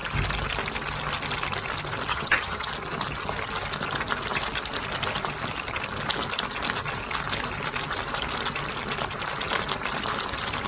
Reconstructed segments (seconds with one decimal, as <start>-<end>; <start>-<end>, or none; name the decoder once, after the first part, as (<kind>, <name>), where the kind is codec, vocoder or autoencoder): 2.1-2.7 (vocoder, HiFi-GAN)